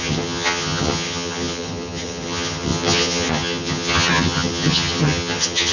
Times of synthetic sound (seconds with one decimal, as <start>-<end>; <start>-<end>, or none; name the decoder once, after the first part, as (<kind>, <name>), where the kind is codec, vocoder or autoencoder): 0.0-5.7 (vocoder, HiFi-GAN)